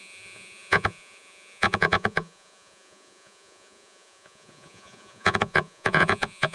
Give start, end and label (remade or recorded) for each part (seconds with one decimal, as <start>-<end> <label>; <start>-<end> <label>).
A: 0.0-6.5 remade